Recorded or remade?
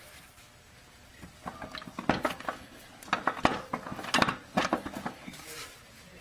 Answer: recorded